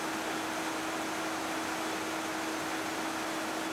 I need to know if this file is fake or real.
real